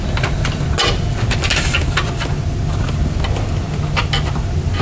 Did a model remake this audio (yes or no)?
no